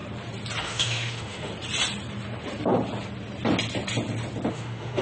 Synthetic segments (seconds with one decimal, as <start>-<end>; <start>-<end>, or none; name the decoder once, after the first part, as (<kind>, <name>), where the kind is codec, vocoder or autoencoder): 0.6-1.5 (autoencoder, DAC-VAE); 4.5-5.0

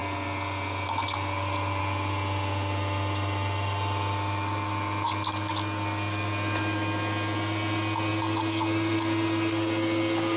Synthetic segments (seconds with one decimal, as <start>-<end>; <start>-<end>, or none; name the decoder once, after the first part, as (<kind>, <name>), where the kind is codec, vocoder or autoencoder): none

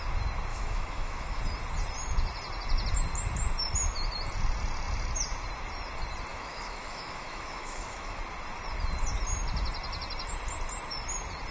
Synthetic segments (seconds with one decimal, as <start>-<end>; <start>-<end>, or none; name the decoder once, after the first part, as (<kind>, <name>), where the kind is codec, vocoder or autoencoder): 0.5-1.4 (autoencoder, DAC-VAE); 6.3-8.2

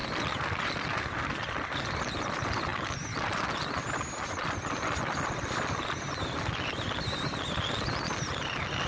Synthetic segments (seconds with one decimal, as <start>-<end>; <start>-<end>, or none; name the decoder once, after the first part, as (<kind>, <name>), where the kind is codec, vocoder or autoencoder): none

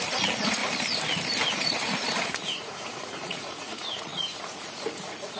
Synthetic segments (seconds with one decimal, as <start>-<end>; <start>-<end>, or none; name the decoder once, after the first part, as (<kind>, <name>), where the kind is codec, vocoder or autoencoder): 0.0-0.6 (vocoder, Vocos); 1.5-5.4

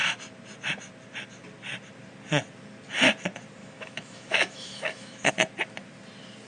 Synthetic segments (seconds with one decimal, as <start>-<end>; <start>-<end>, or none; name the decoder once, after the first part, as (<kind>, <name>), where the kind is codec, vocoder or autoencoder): 3.6-5.3 (autoencoder, DAC-VAE)

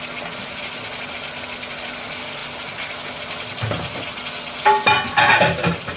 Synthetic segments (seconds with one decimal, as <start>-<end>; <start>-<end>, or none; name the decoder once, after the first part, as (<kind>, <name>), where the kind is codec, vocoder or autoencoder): none